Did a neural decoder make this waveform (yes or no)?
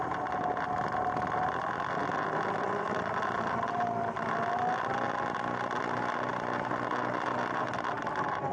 no